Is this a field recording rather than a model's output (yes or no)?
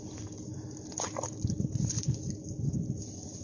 yes